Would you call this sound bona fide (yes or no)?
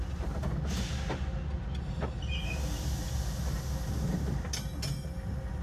yes